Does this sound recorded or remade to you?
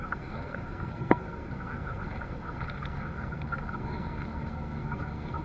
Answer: remade